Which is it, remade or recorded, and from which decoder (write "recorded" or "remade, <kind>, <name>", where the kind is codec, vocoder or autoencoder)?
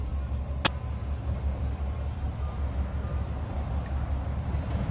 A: recorded